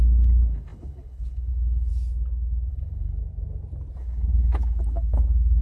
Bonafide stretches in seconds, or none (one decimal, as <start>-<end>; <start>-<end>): 1.9-2.7; 3.2-4.0